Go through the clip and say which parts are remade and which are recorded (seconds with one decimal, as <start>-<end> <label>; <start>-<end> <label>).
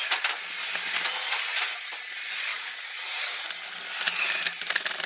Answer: 0.0-2.5 recorded; 2.5-3.2 remade; 3.2-5.1 recorded